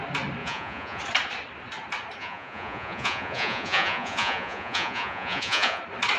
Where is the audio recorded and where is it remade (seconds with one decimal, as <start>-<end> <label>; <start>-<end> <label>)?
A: 0.0-0.4 recorded; 0.4-1.0 remade; 1.0-2.2 recorded; 2.2-5.8 remade; 5.8-6.2 recorded